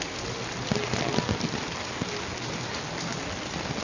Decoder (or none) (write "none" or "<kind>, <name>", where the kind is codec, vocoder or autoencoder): none